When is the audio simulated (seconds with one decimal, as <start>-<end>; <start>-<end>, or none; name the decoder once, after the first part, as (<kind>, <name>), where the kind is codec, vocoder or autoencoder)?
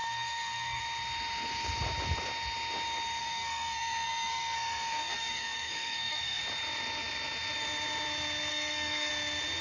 0.0-0.8 (codec, SNAC); 3.2-6.4; 8.5-9.1